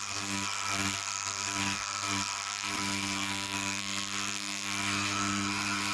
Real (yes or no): no